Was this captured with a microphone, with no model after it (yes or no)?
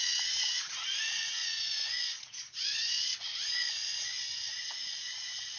no